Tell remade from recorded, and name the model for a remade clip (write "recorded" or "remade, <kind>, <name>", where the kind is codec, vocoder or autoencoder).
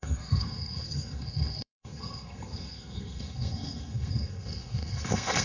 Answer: remade, codec, SNAC